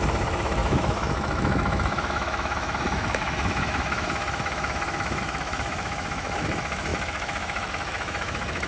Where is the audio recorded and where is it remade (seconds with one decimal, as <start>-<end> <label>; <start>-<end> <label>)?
0.0-8.7 remade